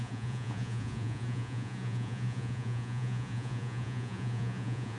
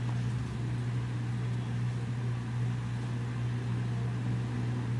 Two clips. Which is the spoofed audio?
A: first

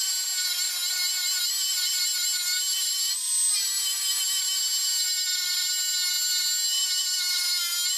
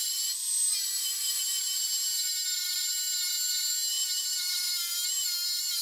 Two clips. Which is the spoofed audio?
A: second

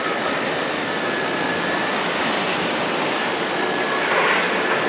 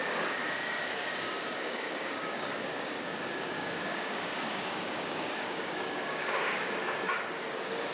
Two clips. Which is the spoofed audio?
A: second